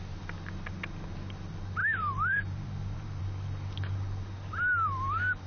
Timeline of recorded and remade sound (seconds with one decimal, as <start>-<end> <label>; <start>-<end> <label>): 0.0-1.8 recorded; 1.8-3.2 remade; 3.2-5.5 recorded